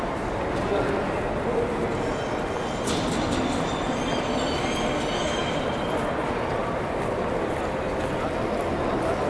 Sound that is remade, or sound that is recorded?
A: recorded